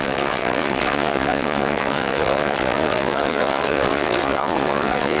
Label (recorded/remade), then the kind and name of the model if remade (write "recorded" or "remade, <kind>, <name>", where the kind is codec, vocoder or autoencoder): remade, vocoder, WaveNeXt